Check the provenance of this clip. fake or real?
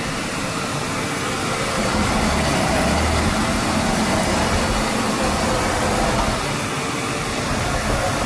real